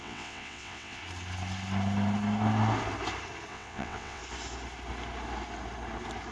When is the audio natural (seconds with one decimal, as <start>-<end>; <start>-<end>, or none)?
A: 1.0-3.5; 4.2-6.3